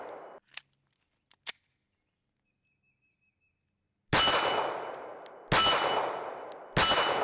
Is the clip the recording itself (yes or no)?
yes